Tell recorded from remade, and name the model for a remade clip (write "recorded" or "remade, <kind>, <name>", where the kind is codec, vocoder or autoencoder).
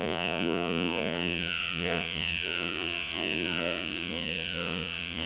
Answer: remade, vocoder, Vocos